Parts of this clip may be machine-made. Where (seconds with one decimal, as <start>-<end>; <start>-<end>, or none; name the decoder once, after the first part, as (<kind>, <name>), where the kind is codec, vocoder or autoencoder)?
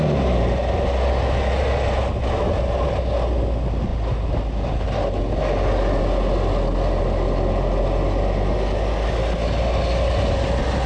none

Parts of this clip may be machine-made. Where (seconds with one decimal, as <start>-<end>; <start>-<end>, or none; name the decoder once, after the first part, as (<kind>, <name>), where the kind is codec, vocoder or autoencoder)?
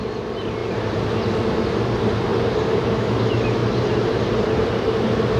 2.3-3.0 (vocoder, BigVGAN v2); 3.6-4.2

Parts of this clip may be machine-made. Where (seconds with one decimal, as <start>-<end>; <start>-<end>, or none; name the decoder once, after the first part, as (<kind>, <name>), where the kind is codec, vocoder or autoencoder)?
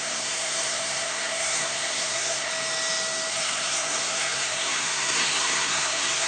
0.0-2.5 (codec, SNAC); 3.3-6.3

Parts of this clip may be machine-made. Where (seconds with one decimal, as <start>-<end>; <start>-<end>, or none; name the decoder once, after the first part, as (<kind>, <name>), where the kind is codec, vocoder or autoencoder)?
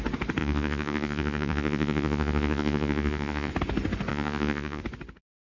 0.4-3.5 (vocoder, Vocos); 4.1-4.8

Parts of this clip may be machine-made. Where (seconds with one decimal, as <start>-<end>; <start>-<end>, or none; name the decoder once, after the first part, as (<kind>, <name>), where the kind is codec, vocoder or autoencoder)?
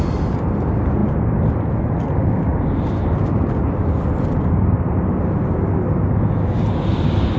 none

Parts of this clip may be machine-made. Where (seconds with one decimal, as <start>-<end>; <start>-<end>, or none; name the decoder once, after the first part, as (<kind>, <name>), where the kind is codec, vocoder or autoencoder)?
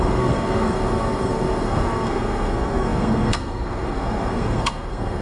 0.0-5.2 (codec, SNAC)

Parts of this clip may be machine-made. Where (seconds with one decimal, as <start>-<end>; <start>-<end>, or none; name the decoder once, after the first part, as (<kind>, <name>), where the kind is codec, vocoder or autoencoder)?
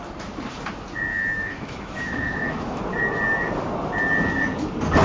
1.1-2.8 (autoencoder, DAC-VAE)